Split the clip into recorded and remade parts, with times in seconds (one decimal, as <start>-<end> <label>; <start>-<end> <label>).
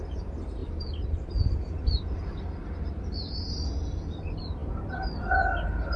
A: 0.0-6.0 recorded